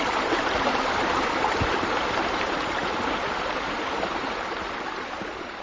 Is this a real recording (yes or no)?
no